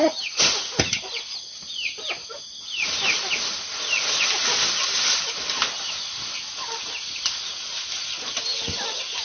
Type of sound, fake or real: real